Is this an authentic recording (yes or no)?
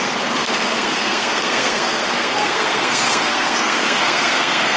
no